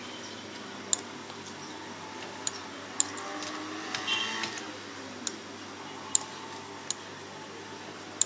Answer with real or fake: real